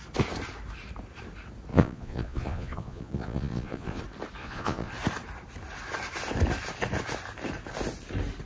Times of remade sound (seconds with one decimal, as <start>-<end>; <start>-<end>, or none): 1.7-4.0; 4.4-4.9